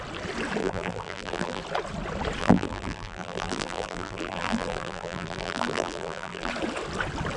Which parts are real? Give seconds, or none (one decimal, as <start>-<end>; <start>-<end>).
0.0-0.6; 1.6-2.4; 6.5-7.4